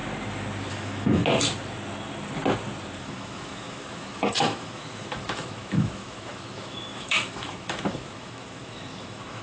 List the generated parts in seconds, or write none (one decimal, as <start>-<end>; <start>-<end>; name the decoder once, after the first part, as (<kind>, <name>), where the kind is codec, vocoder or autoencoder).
0.7-1.2 (autoencoder, DAC-VAE); 3.0-9.4